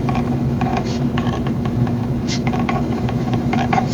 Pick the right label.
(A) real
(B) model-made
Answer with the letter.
B